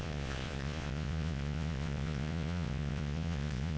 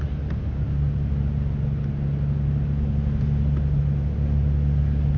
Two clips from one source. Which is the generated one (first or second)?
first